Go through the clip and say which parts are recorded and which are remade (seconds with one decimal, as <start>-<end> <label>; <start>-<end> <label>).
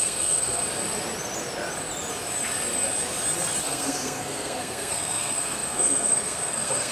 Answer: 0.0-0.6 remade; 0.6-3.6 recorded; 3.6-6.9 remade